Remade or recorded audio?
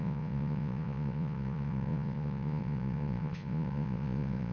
remade